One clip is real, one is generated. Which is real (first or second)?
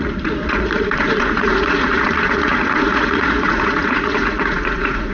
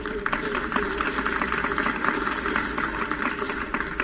second